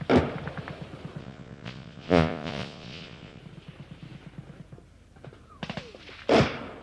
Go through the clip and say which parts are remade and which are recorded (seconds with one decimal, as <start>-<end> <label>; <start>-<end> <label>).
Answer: 0.0-1.2 recorded; 1.2-3.4 remade; 3.4-6.8 recorded